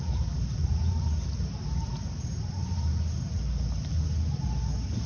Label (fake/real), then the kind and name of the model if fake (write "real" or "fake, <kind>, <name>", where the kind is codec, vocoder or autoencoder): real